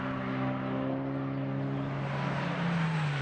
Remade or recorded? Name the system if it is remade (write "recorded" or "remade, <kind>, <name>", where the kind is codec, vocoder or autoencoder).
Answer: recorded